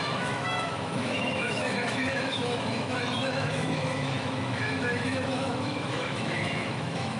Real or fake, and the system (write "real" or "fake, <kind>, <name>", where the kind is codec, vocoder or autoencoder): fake, autoencoder, DAC-VAE